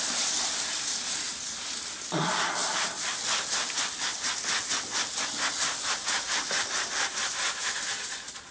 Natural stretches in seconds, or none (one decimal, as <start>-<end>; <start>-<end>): 0.0-8.5